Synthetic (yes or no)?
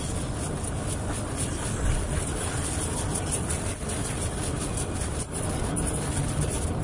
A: yes